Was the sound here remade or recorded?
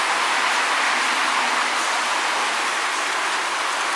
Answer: recorded